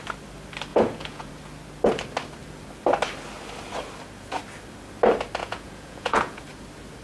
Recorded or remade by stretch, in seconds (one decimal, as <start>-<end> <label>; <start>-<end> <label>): 0.0-0.7 recorded; 0.7-1.3 remade; 1.3-5.4 recorded; 5.4-6.4 remade; 6.4-7.0 recorded